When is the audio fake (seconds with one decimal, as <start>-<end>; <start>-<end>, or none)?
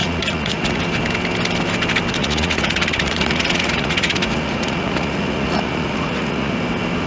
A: 0.0-0.8; 2.2-6.5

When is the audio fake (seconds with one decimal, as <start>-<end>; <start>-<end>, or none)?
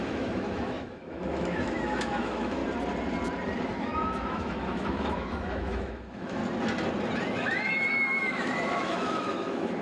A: 0.0-2.6; 3.7-6.4; 7.2-9.8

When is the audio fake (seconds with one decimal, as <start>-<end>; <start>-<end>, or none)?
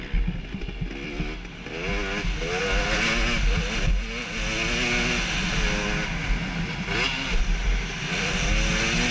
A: none